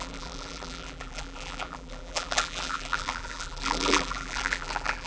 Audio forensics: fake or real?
fake